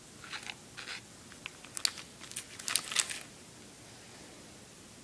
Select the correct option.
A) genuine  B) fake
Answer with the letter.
A